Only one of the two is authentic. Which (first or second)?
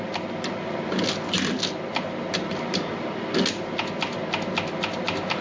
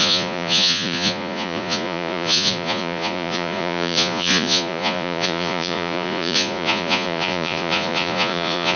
first